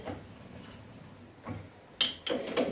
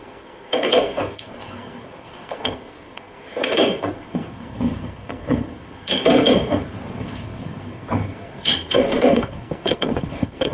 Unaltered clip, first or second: first